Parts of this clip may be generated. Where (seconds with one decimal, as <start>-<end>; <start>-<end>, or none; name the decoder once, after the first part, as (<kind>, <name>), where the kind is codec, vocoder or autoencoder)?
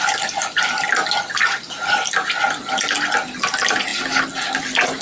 none